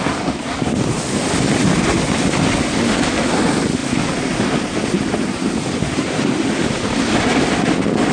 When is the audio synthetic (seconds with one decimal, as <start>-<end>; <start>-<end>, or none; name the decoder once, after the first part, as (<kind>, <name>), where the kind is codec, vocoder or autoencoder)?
none